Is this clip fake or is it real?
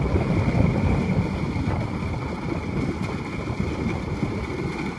real